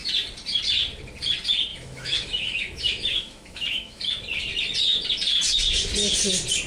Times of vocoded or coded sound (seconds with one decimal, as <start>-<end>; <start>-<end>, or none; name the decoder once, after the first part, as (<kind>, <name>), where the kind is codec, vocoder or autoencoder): 1.7-4.0 (autoencoder, DAC-VAE)